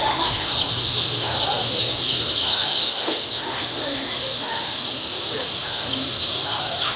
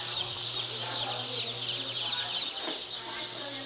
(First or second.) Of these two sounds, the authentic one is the second